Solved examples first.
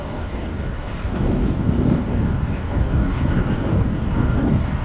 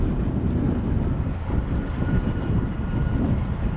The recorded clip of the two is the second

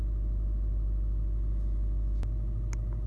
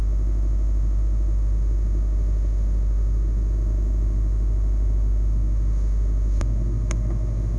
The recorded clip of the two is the first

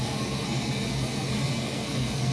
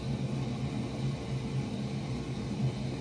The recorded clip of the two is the second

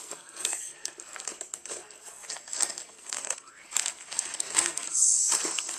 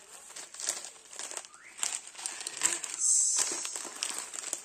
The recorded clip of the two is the second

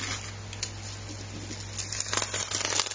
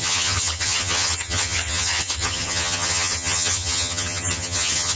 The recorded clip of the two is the first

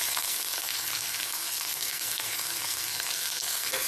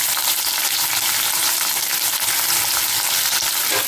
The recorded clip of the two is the second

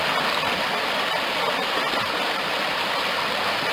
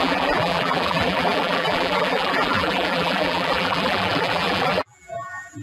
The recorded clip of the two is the first